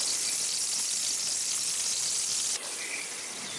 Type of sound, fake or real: real